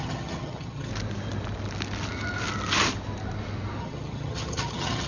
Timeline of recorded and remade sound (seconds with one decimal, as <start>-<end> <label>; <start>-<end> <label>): 0.0-0.9 remade; 0.9-3.8 recorded; 3.8-5.1 remade